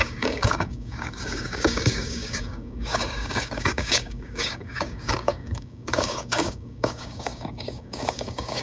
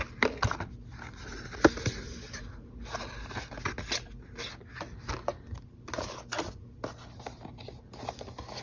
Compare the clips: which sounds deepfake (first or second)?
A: first